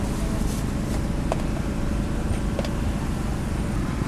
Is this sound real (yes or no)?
yes